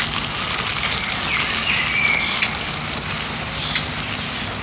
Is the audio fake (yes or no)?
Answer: no